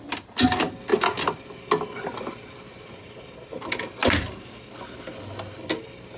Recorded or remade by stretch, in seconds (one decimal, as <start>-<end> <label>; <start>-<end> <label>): 0.0-4.0 recorded; 4.0-4.7 remade; 4.7-6.2 recorded